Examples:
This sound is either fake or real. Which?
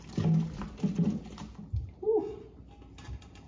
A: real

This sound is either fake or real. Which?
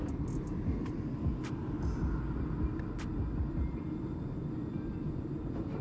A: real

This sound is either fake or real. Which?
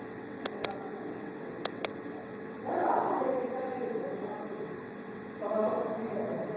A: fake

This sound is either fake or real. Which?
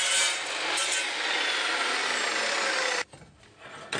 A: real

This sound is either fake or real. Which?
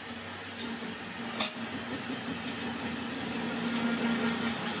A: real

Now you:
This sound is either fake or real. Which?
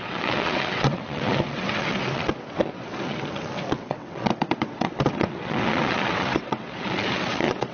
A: fake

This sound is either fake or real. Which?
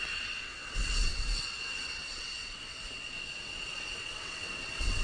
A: fake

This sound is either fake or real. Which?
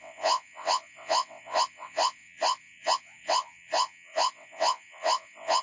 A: fake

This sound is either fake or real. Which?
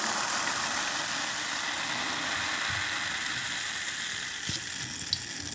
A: real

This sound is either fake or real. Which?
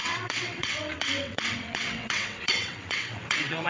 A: fake